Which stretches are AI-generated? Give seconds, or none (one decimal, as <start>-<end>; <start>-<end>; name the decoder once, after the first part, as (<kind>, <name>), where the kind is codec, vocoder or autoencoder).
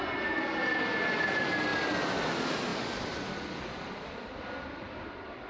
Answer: none